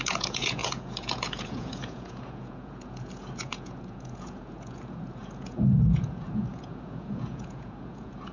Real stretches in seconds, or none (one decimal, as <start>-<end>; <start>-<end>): none